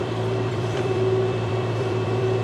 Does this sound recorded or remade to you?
remade